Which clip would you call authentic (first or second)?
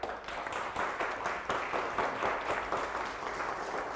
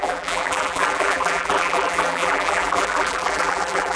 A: first